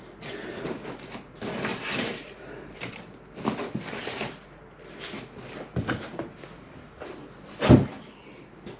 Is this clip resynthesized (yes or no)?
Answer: no